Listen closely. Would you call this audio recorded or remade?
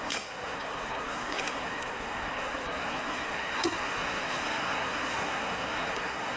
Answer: remade